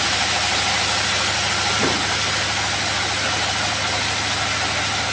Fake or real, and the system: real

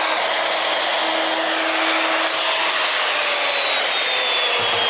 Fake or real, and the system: real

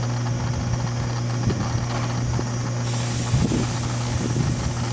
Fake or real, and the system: real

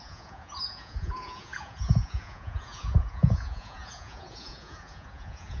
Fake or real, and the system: fake, vocoder, Vocos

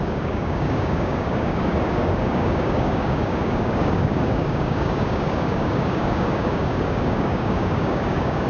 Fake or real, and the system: fake, codec, DAC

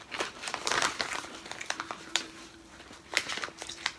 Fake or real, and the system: fake, vocoder, BigVGAN v2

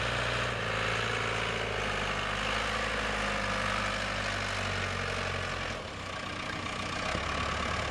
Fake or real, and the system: real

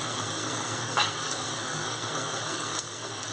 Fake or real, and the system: fake, codec, SNAC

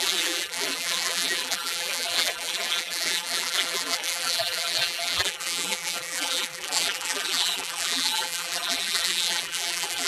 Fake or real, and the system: fake, vocoder, BigVGAN v2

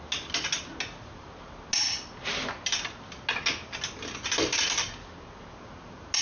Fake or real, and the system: real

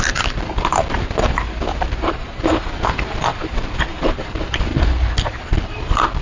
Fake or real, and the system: fake, vocoder, BigVGAN v2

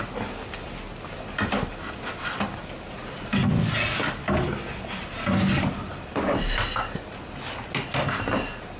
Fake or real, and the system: real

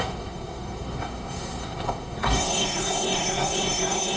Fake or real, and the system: fake, codec, SNAC